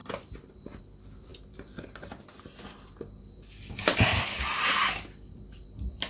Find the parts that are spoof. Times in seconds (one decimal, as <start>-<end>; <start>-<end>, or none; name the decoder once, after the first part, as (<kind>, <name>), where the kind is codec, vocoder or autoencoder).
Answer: none

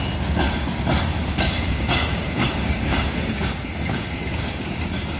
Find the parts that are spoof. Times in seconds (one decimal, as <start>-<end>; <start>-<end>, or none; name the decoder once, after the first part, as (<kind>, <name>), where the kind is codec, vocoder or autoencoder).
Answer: 1.3-4.4 (codec, DAC)

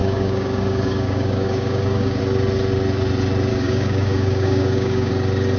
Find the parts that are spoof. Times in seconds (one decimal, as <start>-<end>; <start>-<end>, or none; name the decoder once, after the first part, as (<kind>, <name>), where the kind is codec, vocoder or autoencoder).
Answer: 0.0-2.2 (codec, DAC); 3.5-5.1

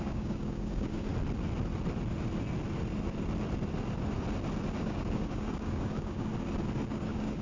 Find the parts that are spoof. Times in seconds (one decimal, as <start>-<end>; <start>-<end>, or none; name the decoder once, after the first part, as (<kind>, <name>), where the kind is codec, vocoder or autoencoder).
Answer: 0.0-1.1 (codec, DAC); 4.8-6.3; 6.9-7.4

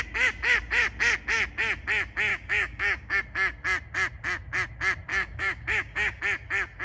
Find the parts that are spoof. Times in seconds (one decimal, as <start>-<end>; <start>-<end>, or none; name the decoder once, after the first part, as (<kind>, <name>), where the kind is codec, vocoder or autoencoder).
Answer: 2.3-3.2 (codec, DAC); 5.1-6.2

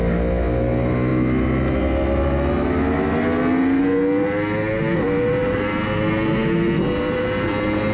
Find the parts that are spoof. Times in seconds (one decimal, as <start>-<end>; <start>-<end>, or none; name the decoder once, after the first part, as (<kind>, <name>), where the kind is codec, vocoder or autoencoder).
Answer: none